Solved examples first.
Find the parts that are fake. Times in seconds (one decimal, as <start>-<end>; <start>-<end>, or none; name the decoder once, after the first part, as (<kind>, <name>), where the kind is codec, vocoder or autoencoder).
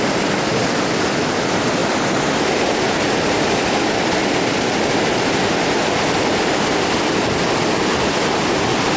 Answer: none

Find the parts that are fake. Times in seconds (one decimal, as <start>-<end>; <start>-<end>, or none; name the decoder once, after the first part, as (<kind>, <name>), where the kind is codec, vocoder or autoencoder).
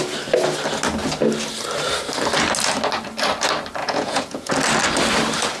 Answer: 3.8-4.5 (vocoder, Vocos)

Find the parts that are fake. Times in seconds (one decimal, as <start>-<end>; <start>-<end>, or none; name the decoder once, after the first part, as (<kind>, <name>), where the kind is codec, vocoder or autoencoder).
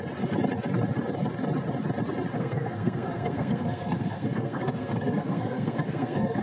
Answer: 2.3-6.4 (codec, SNAC)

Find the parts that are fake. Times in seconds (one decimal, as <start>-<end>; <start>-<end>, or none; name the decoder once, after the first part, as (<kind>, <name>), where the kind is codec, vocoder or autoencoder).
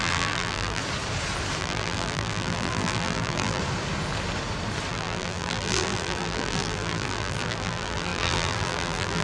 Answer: 0.0-0.8 (vocoder, BigVGAN v2); 1.6-3.6; 4.9-9.2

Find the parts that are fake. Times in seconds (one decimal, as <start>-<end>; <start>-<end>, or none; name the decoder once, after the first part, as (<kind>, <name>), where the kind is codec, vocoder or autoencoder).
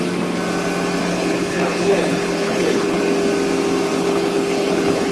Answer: 1.0-3.0 (codec, HILCodec); 3.9-5.1